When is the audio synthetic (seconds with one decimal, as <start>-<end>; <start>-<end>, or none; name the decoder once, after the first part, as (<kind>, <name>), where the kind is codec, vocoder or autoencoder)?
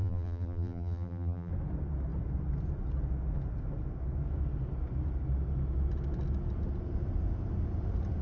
0.0-1.5 (vocoder, BigVGAN v2)